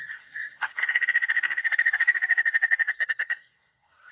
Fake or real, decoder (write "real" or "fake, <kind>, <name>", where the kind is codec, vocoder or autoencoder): fake, codec, SNAC